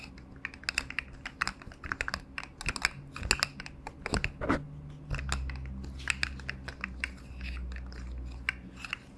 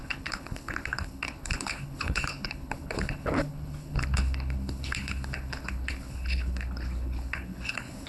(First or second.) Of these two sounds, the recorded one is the first